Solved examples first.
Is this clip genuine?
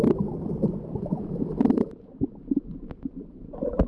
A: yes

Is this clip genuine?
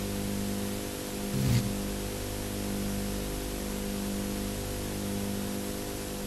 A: yes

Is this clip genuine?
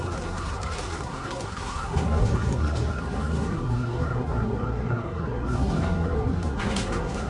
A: no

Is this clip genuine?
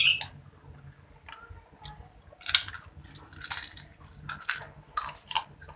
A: yes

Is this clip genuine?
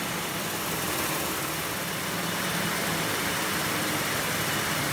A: yes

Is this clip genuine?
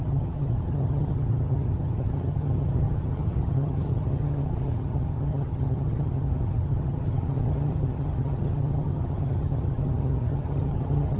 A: no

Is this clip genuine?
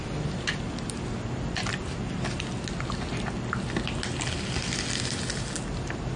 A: yes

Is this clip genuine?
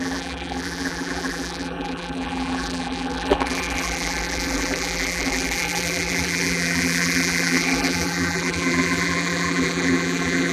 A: no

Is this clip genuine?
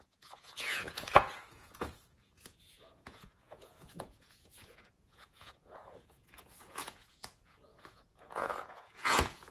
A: no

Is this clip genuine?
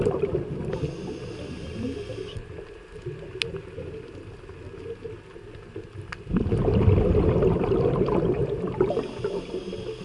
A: yes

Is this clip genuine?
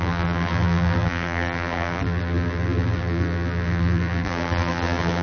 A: no